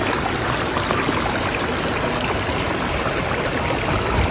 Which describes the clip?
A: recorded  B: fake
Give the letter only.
A